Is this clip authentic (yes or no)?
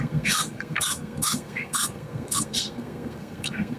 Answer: no